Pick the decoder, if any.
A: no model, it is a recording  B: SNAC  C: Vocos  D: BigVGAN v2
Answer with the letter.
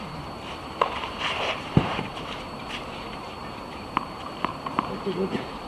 D